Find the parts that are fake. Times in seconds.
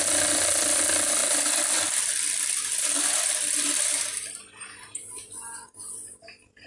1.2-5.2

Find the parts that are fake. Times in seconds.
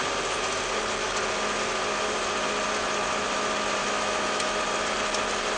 3.8-4.6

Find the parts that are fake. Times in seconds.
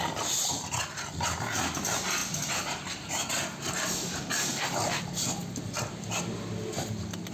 none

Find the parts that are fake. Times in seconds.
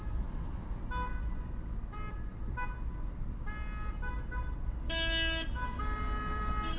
none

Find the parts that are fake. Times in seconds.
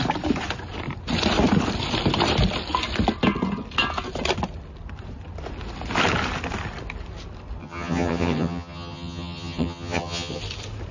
7.6-10.4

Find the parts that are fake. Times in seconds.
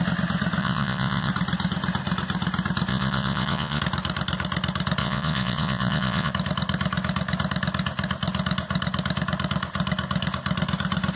0.6-1.3; 2.9-3.8; 5.0-6.3